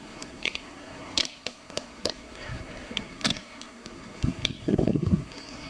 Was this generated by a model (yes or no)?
yes